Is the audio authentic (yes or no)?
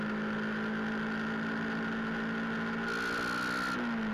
yes